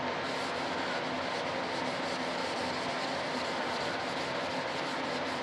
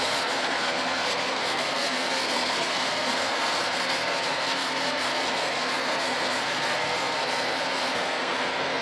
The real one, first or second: first